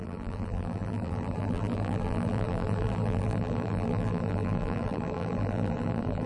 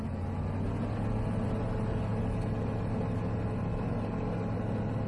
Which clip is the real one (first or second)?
second